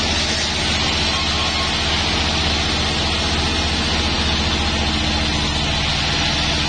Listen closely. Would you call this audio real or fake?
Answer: real